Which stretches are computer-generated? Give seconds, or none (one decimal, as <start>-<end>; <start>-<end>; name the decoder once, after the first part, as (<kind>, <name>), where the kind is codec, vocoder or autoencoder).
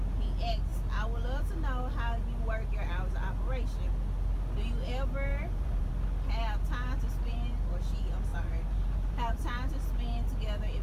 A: 5.3-5.9 (vocoder, BigVGAN v2); 8.3-9.7